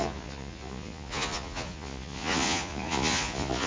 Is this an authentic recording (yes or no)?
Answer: no